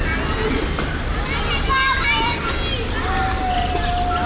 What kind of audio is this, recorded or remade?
recorded